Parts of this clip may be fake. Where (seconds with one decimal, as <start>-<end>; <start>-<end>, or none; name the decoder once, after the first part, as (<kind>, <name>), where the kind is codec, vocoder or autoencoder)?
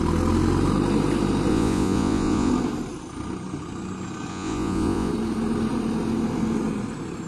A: 1.5-2.5 (vocoder, Vocos); 4.3-5.1